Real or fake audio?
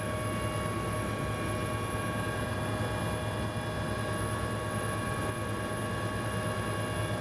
real